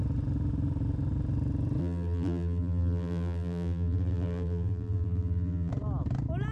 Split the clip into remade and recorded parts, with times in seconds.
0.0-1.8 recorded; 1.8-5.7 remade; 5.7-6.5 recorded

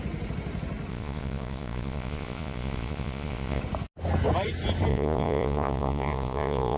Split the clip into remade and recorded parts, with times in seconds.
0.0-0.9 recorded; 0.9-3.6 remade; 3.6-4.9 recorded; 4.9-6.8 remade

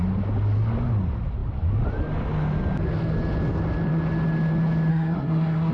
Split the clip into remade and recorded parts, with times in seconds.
0.0-4.9 recorded; 4.9-5.7 remade

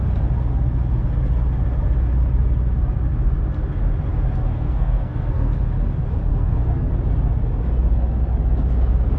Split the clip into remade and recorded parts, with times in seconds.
0.0-4.5 recorded; 4.5-5.5 remade; 5.5-6.3 recorded; 6.3-6.9 remade; 6.9-9.2 recorded

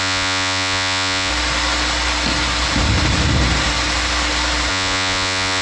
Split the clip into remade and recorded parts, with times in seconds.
0.0-1.3 remade; 1.3-4.7 recorded; 4.7-5.6 remade

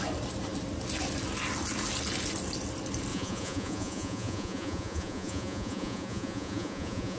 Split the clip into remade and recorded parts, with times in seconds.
0.0-3.1 recorded; 3.1-7.2 remade